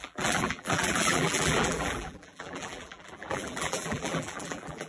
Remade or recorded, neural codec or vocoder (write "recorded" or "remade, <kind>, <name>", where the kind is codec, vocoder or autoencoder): remade, vocoder, BigVGAN v2